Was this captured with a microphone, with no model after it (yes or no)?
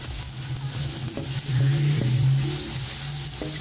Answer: yes